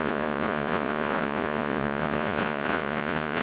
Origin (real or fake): fake